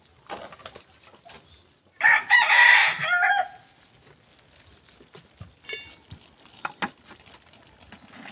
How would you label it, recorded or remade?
recorded